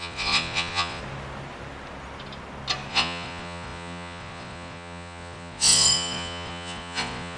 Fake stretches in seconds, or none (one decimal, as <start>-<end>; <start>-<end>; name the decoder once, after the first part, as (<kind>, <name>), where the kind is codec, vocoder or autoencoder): 0.0-1.0 (vocoder, Vocos); 2.9-7.4